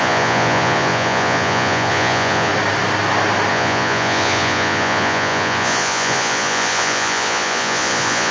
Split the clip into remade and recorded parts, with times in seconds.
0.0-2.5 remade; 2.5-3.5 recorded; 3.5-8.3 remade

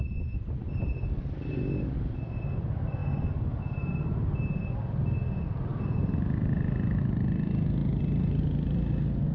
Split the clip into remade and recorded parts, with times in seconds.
0.0-5.7 recorded; 5.7-7.0 remade; 7.0-9.3 recorded

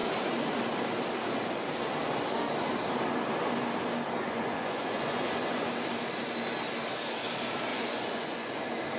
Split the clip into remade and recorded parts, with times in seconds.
0.0-4.2 recorded; 4.2-5.7 remade; 5.7-7.7 recorded; 7.7-8.6 remade; 8.6-9.0 recorded

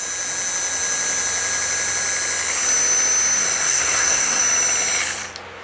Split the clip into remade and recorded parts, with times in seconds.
0.0-3.4 recorded; 3.4-4.4 remade; 4.4-5.6 recorded

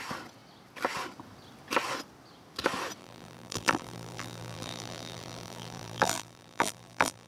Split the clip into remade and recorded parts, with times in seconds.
0.0-3.0 recorded; 3.0-7.3 remade

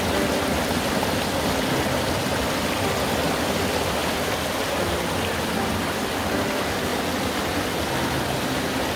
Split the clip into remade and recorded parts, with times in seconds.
0.0-9.0 recorded

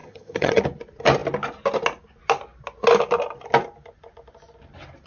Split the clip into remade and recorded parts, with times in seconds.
0.0-0.6 remade; 0.6-5.1 recorded

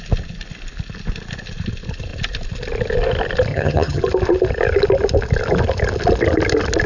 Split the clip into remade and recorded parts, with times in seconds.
0.0-3.5 recorded; 3.5-4.0 remade; 4.0-6.9 recorded